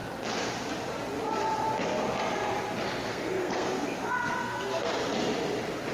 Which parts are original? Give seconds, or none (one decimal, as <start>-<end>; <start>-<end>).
0.0-3.1; 4.9-5.9